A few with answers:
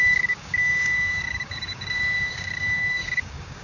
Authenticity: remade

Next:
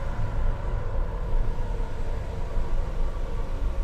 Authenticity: recorded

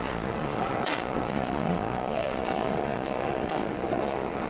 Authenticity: remade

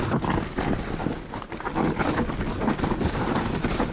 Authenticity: recorded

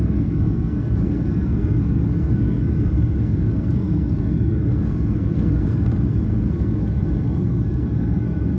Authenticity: remade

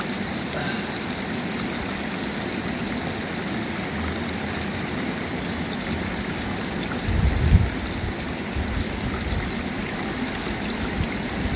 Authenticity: recorded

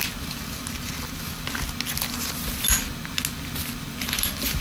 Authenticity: recorded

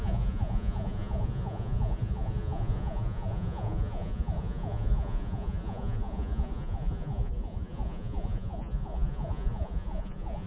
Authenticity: remade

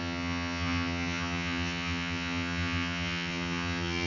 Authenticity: remade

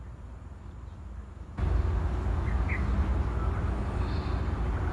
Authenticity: recorded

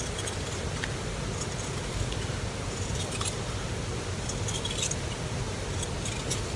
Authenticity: recorded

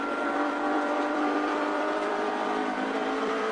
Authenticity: remade